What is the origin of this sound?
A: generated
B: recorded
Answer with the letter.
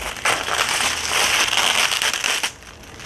B